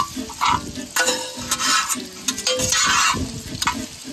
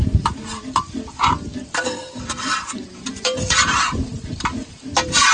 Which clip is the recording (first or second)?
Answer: first